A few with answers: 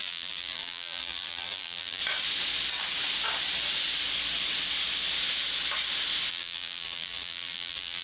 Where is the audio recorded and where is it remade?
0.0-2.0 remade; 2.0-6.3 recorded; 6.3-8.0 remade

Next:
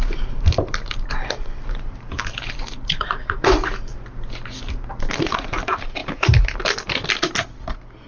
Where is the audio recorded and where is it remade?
0.0-3.9 remade; 3.9-5.1 recorded; 5.1-6.0 remade; 6.0-8.1 recorded

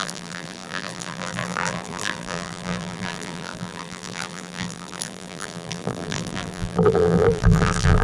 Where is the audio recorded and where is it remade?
0.0-8.0 remade